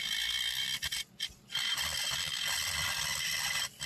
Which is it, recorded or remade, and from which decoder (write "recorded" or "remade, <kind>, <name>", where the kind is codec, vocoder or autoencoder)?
recorded